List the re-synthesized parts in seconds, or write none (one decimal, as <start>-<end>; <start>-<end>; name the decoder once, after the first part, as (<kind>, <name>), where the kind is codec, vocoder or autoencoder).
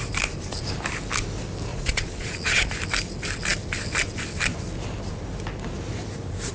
1.7-2.7 (vocoder, Vocos)